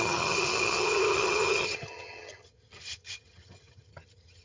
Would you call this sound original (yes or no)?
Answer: no